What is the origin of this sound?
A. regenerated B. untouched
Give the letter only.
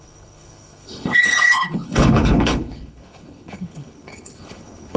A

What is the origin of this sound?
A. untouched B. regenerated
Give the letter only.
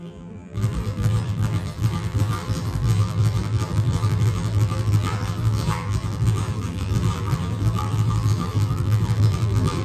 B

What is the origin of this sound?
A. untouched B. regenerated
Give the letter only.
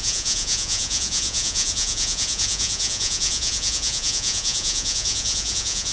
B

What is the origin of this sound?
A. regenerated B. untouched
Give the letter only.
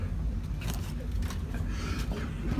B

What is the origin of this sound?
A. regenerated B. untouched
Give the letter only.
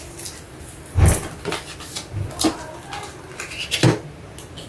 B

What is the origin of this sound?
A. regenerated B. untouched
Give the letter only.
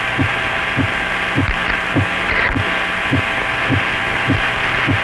B